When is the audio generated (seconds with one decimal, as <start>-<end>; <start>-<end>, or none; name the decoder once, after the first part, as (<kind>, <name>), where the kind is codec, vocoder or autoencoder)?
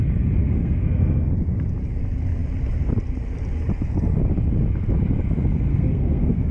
0.4-1.3 (codec, SNAC); 5.7-6.5